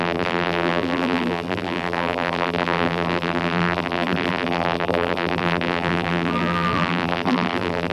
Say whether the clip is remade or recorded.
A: remade